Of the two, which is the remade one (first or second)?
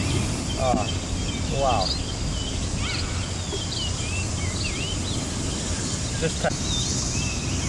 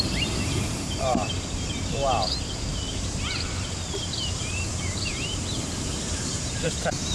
second